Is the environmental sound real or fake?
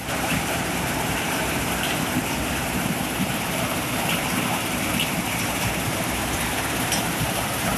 fake